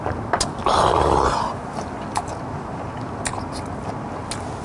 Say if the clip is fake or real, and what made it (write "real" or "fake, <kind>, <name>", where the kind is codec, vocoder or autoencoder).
real